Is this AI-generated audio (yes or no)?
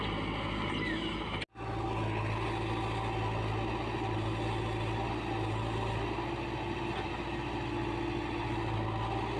no